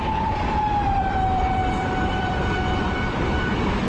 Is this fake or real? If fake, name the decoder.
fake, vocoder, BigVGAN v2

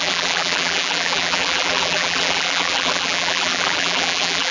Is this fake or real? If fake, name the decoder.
fake, vocoder, BigVGAN v2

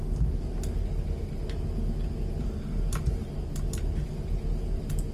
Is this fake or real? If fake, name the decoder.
real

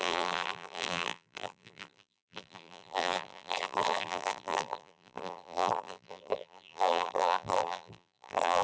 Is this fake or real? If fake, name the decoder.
fake, vocoder, BigVGAN v2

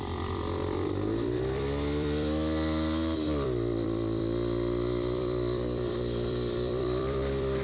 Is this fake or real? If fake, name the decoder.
fake, vocoder, BigVGAN v2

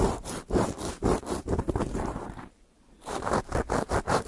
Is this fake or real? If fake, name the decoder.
fake, vocoder, BigVGAN v2